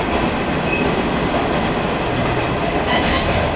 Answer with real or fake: real